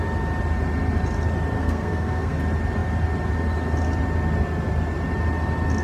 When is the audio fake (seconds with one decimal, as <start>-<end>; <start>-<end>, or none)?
1.6-2.4